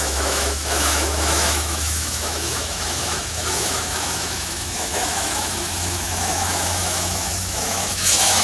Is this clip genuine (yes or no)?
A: no